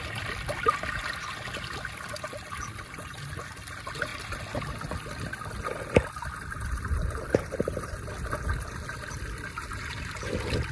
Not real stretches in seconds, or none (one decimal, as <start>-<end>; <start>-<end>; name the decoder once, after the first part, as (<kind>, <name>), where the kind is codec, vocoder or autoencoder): none